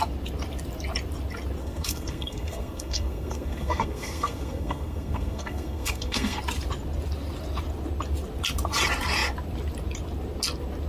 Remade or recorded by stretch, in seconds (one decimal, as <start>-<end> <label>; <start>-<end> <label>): 0.0-1.6 recorded; 1.6-6.4 remade; 6.4-10.9 recorded